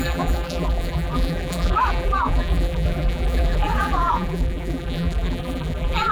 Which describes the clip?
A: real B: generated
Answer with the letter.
B